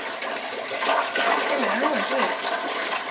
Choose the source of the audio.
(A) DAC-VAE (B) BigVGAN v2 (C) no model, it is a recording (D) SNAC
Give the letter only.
C